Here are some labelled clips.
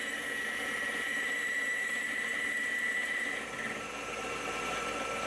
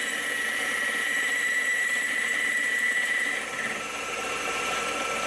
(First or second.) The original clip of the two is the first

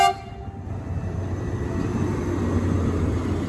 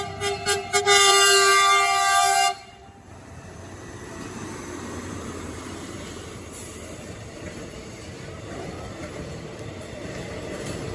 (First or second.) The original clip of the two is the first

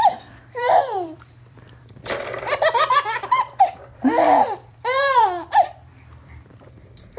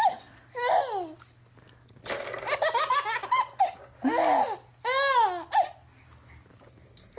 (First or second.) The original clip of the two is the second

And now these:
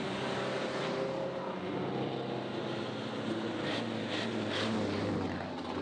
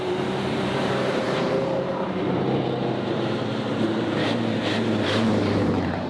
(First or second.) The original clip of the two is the first